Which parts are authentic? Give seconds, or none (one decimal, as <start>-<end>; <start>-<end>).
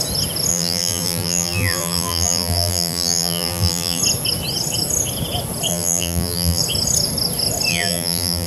0.0-0.5; 4.0-5.7; 6.6-7.7